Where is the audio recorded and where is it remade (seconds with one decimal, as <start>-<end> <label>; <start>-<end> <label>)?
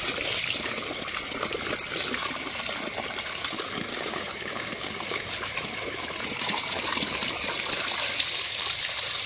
0.0-3.9 recorded; 3.9-5.3 remade; 5.3-9.3 recorded